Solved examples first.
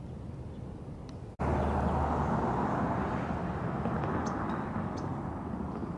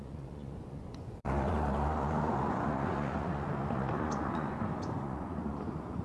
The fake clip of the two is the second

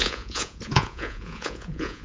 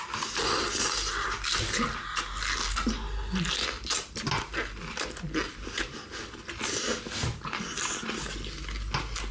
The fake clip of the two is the first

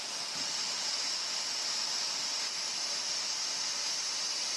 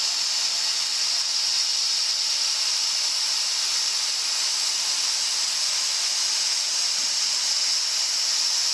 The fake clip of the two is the first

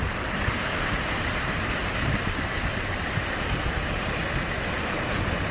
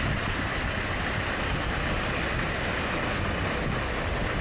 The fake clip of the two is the first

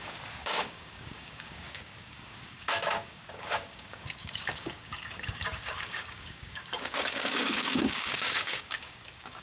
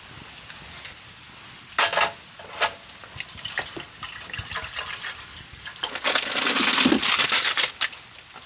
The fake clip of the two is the first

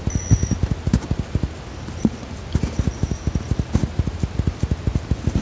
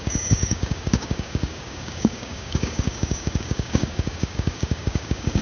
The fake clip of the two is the second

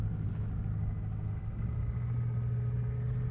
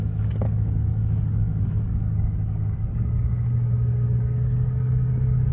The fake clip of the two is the second